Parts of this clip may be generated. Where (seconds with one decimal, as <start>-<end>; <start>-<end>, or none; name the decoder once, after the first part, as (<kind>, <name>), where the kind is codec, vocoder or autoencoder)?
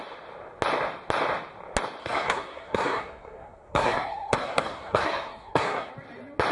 2.0-5.9 (codec, SNAC)